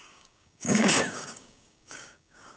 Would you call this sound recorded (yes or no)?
no